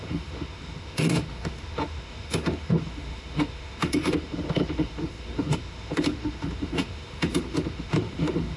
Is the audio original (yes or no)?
no